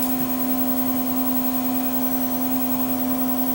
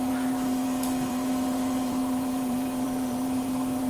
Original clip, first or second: first